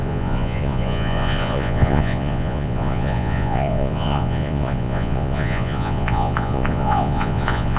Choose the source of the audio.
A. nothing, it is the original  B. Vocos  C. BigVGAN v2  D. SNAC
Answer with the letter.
B